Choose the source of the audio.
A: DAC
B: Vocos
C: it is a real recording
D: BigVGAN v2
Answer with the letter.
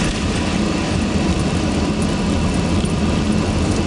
C